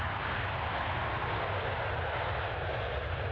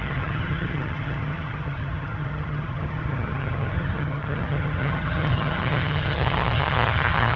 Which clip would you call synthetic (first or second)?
second